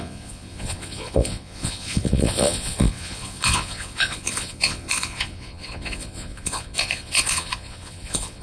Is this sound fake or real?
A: fake